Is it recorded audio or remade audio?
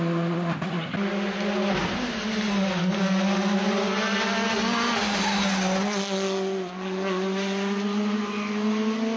recorded